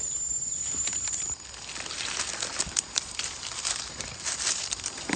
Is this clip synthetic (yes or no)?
yes